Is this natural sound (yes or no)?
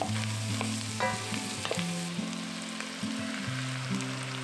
yes